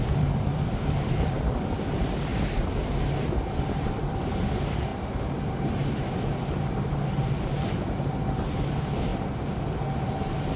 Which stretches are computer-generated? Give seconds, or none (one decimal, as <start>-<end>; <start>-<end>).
0.0-2.3; 3.6-9.1; 10.1-10.6